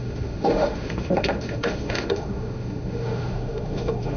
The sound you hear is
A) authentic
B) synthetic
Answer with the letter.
B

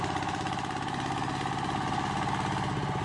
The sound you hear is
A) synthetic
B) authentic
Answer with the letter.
B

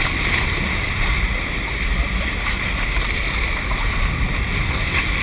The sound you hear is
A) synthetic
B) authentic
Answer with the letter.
B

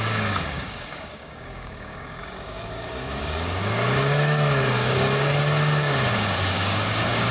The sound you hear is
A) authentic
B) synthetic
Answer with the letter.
B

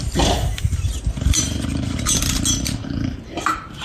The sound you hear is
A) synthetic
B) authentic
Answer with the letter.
A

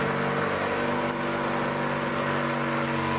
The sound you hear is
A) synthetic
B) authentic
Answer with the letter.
B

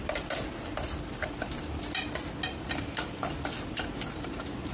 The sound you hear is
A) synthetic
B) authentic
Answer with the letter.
B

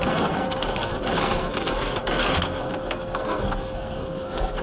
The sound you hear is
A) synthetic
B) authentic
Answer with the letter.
A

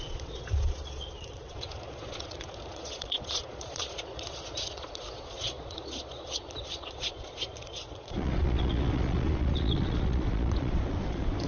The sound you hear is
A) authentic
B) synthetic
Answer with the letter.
B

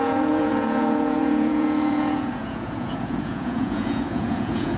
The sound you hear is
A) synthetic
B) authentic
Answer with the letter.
A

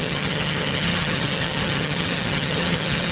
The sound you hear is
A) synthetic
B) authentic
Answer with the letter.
A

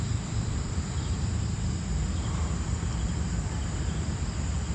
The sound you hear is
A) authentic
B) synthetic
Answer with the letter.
B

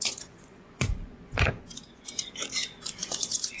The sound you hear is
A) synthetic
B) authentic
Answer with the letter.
A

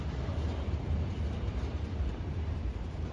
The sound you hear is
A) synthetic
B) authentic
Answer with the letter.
A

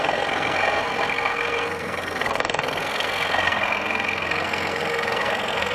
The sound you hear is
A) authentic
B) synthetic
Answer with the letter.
B